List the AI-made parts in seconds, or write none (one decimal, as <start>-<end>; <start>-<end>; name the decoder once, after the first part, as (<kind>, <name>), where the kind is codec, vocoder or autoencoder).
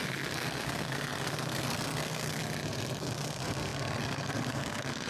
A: 0.0-2.4 (codec, SNAC); 3.0-5.1